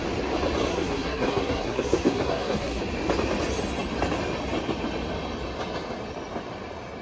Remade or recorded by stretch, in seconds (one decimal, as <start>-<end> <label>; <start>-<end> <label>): 0.0-0.7 recorded; 0.7-2.8 remade; 2.8-7.0 recorded